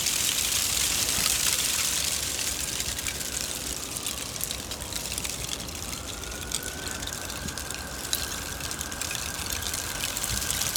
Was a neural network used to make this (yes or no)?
yes